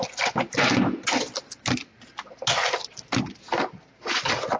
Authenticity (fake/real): real